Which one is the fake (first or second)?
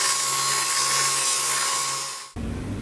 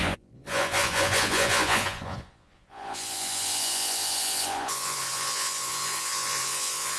second